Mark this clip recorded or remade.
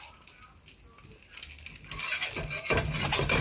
recorded